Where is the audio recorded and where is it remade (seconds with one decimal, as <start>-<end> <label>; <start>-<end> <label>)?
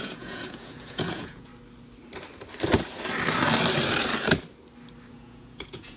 0.0-1.5 remade; 1.5-5.1 recorded; 5.1-6.0 remade